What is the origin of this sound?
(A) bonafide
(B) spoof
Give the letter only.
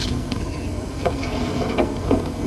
B